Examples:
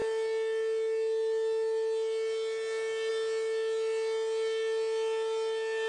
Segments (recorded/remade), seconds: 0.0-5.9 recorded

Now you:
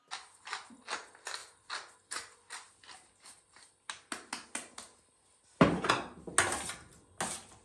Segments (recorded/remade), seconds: 0.0-7.6 recorded